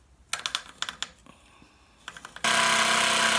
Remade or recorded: recorded